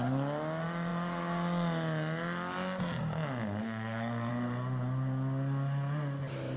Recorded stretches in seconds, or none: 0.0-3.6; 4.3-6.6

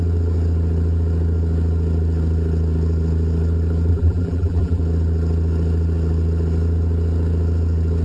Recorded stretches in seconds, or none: 0.0-3.9; 4.8-8.0

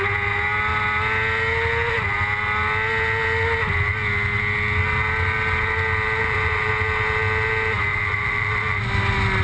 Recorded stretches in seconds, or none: 0.0-6.2; 6.7-7.9; 8.8-9.4

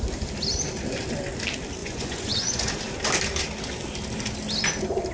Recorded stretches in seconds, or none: 0.0-1.8; 2.7-5.1

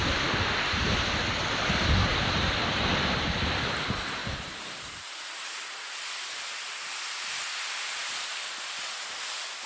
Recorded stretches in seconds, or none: 0.0-4.2; 5.1-9.7